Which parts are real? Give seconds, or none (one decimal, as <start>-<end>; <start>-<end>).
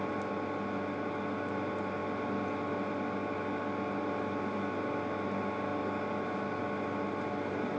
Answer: 0.0-7.8